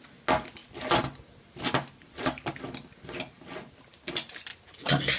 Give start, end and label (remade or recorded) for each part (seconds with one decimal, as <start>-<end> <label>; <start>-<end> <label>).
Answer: 0.0-5.2 recorded